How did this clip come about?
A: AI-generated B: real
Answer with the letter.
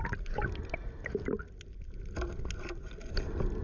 B